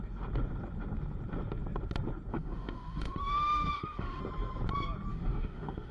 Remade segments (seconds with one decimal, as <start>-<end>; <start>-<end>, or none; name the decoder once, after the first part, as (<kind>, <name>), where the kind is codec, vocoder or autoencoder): 2.3-4.2 (autoencoder, DAC-VAE); 5.1-5.9